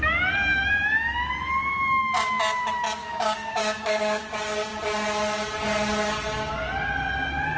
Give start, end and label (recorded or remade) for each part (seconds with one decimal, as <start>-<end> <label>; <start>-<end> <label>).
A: 0.0-3.0 recorded; 3.0-4.2 remade; 4.2-7.6 recorded